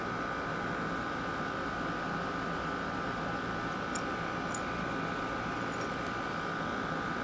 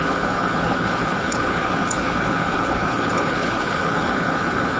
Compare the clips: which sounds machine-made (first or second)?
second